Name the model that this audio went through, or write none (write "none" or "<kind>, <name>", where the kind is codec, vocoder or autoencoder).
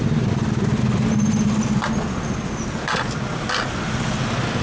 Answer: none